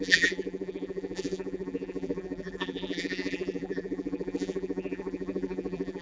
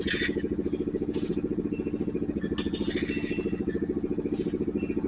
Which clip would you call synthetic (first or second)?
first